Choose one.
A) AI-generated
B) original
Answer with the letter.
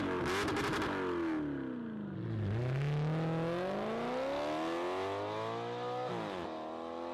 B